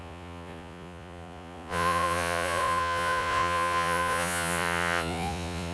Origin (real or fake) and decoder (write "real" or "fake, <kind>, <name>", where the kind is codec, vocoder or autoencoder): fake, vocoder, Vocos